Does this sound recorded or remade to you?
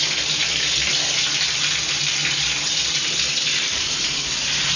recorded